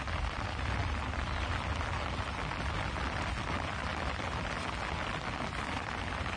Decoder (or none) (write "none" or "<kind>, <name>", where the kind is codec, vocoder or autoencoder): none